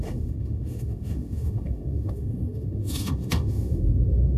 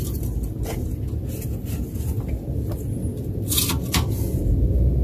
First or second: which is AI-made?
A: first